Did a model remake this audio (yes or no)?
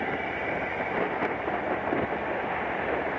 no